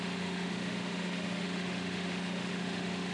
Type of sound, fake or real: fake